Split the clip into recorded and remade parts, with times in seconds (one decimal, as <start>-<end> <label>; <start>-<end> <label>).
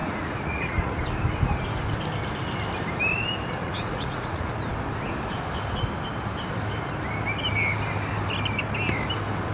0.0-1.0 remade; 1.0-3.6 recorded; 3.6-4.5 remade; 4.5-9.5 recorded